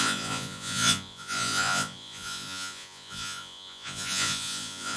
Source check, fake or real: fake